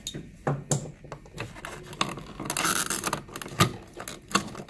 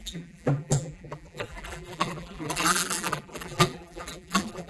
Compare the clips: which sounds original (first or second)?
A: first